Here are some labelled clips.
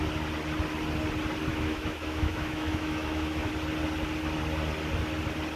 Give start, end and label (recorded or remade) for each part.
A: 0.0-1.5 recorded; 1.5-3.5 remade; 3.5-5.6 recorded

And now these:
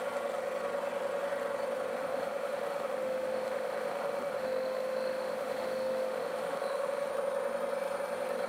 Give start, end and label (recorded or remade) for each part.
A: 0.0-2.0 recorded; 2.0-7.1 remade; 7.1-8.5 recorded

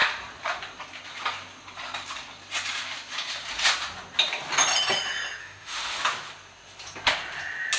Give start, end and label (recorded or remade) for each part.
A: 0.0-5.4 recorded; 5.4-6.0 remade; 6.0-7.8 recorded

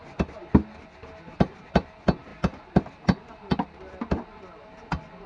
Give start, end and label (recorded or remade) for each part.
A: 0.0-5.3 recorded

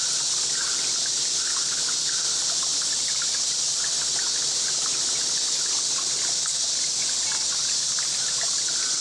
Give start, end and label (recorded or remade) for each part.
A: 0.0-9.0 recorded

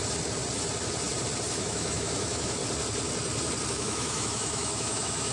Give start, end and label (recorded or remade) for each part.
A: 0.0-1.6 recorded; 1.6-2.6 remade; 2.6-3.7 recorded; 3.7-5.3 remade

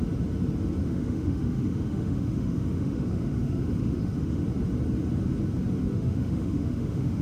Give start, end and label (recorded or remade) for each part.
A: 0.0-0.8 recorded; 0.8-4.4 remade; 4.4-5.8 recorded; 5.8-7.2 remade